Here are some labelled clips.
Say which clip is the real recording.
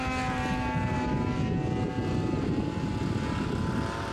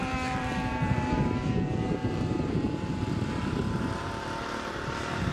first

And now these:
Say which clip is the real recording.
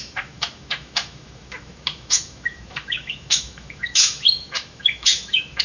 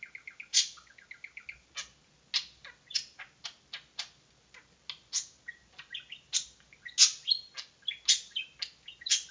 second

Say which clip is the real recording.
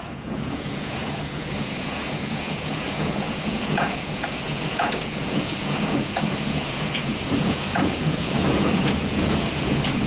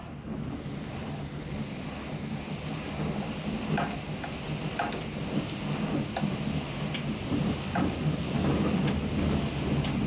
second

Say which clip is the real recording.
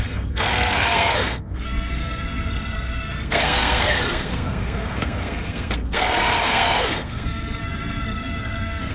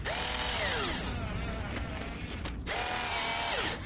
second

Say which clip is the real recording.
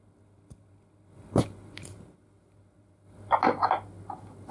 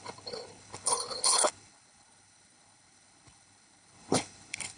first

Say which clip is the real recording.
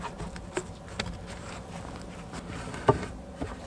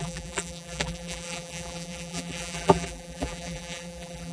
first